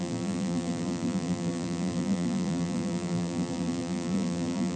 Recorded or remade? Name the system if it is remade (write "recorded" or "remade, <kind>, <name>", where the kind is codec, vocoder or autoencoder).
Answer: remade, vocoder, BigVGAN v2